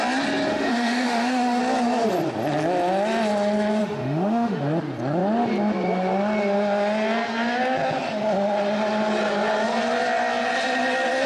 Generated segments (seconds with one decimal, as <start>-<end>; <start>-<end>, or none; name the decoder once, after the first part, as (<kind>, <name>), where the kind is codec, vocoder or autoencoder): 0.5-1.6 (autoencoder, DAC-VAE); 3.8-4.6